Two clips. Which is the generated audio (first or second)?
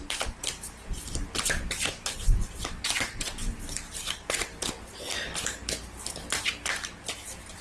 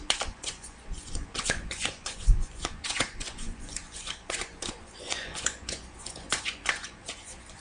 second